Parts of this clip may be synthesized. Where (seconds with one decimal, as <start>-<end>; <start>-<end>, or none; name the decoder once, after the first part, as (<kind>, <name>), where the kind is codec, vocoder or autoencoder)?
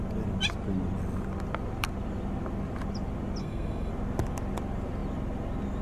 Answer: 3.4-3.9 (codec, SNAC)